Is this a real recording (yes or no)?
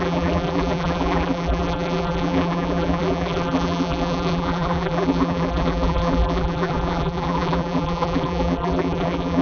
no